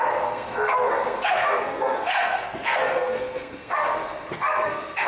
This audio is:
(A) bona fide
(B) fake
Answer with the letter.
B